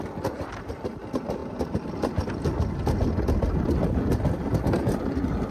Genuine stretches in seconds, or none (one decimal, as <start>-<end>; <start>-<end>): 0.0-5.5

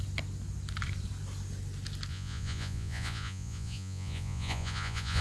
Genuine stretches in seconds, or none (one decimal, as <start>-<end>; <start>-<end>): 0.0-2.1

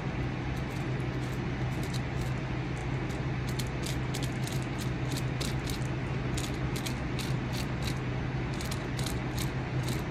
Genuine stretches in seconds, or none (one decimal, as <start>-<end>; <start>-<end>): 0.0-10.1

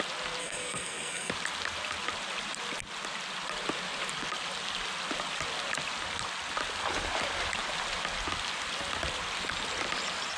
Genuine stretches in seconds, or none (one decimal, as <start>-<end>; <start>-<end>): 0.0-0.4; 1.3-10.4

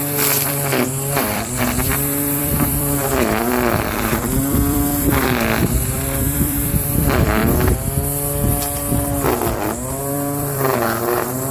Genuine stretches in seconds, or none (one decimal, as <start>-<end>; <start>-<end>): 7.4-10.0

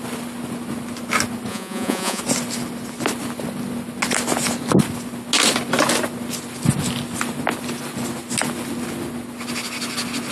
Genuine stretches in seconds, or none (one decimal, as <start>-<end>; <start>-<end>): 0.0-1.5; 2.2-10.3

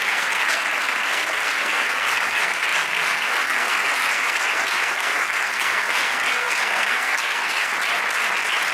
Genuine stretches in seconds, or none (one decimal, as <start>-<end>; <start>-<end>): 7.7-8.7